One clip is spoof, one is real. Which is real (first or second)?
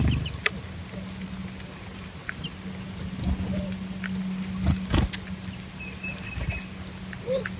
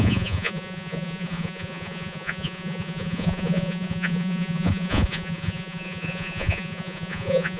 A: first